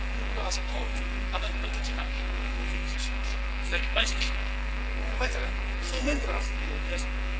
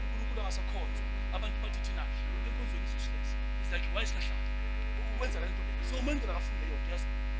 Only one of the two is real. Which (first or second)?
second